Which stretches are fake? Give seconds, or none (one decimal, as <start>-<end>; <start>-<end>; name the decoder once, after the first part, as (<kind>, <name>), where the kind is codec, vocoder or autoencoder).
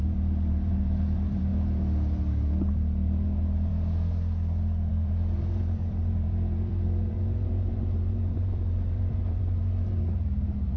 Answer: 0.0-1.5 (vocoder, BigVGAN v2); 2.7-3.7; 4.9-10.8